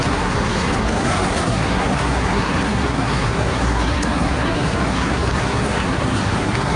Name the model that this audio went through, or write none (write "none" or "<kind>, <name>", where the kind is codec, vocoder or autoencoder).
codec, SNAC